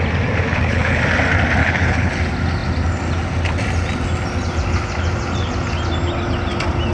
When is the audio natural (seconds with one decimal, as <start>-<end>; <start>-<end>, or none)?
0.0-0.5; 1.0-1.6; 2.1-6.9